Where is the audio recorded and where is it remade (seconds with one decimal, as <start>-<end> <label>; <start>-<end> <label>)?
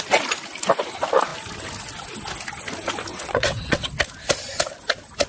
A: 0.0-3.1 recorded; 3.1-3.9 remade; 3.9-5.3 recorded